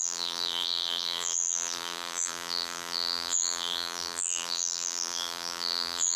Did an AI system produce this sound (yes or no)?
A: yes